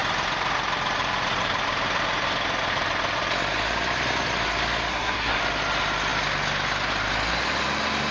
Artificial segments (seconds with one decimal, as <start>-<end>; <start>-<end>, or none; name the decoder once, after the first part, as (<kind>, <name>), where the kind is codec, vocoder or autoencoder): 4.9-5.4 (codec, SNAC)